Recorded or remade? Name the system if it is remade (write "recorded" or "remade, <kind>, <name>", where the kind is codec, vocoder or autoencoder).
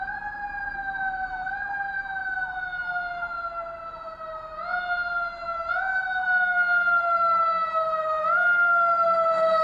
recorded